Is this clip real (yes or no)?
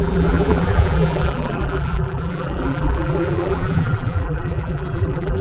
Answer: no